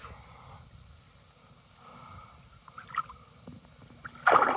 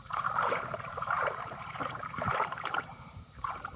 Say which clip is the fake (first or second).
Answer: second